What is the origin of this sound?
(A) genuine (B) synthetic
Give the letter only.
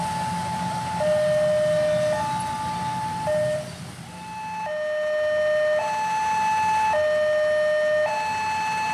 A